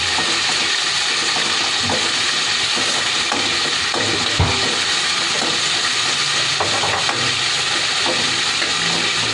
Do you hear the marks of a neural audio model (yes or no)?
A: no